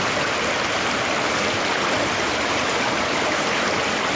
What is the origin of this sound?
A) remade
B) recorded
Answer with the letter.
B